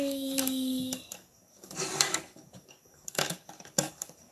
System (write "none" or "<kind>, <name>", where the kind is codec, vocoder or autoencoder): codec, DAC